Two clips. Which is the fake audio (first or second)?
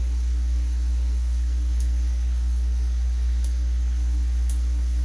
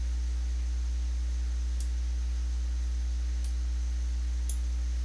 first